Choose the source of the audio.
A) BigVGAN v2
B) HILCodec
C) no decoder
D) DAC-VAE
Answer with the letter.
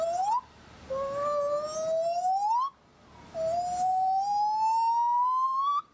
C